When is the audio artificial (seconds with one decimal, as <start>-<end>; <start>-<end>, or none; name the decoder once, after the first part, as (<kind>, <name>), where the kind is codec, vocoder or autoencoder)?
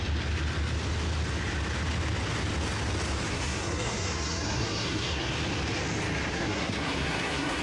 3.3-5.3 (codec, SNAC); 6.3-7.6